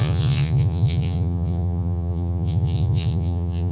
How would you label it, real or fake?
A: fake